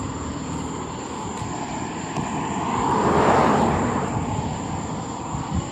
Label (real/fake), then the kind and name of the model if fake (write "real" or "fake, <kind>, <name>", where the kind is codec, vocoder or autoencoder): fake, vocoder, BigVGAN v2